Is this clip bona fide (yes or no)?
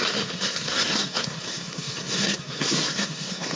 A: no